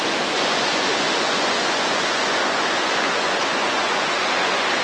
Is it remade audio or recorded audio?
remade